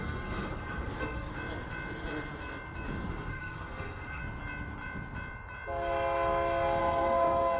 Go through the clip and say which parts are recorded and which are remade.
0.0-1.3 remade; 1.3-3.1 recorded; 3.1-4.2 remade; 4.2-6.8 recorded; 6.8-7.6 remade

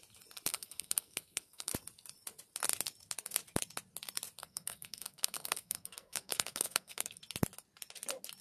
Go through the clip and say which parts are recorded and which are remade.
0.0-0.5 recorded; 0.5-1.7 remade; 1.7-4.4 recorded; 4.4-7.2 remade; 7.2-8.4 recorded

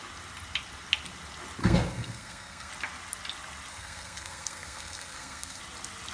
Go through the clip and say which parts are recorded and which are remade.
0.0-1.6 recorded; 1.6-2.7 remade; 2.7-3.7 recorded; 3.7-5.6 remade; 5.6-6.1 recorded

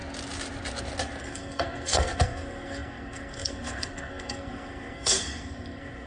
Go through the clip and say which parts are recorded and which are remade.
0.0-1.2 recorded; 1.2-6.1 remade

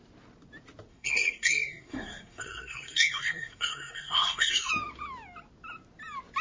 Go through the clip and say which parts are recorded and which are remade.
0.0-0.9 recorded; 0.9-4.7 remade; 4.7-6.4 recorded

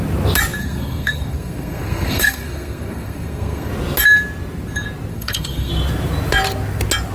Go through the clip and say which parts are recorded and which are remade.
0.0-0.6 recorded; 0.6-3.7 remade; 3.7-5.1 recorded; 5.1-5.7 remade; 5.7-7.1 recorded